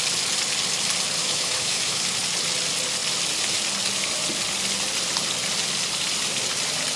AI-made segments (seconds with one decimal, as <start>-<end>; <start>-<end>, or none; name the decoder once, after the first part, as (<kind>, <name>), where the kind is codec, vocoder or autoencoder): 1.2-2.0 (autoencoder, DAC-VAE)

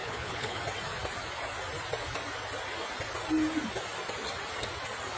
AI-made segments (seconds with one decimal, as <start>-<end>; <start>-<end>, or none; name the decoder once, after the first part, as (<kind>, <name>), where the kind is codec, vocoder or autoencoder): 0.0-0.6 (codec, HILCodec)

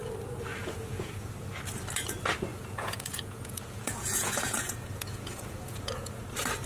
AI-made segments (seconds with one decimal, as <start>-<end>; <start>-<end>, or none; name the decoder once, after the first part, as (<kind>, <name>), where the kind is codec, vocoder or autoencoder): 0.5-1.3 (vocoder, Vocos); 2.5-6.2

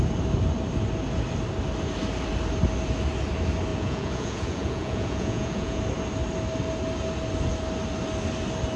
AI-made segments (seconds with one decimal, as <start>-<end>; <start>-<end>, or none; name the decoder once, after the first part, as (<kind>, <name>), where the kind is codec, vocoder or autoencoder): 3.7-5.8 (vocoder, Vocos)

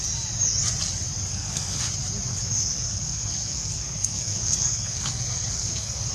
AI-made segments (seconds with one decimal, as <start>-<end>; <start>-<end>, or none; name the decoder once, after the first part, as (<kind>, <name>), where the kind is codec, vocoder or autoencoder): 1.3-1.9 (codec, SNAC); 2.3-6.1